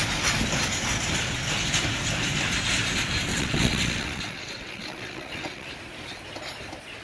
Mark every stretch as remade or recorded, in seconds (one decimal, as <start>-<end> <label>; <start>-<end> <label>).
0.0-3.3 recorded; 3.3-5.7 remade; 5.7-7.0 recorded